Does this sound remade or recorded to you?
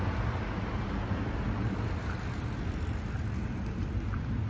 recorded